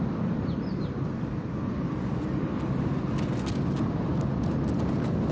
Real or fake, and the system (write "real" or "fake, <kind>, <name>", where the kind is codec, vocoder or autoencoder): real